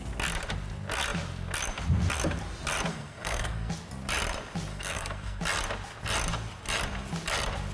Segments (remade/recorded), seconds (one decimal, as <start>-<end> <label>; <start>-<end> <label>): 0.0-2.9 recorded; 2.9-3.7 remade; 3.7-4.7 recorded; 4.7-5.4 remade; 5.4-7.7 recorded